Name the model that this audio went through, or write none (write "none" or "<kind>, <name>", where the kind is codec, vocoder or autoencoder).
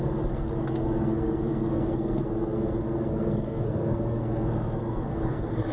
codec, SNAC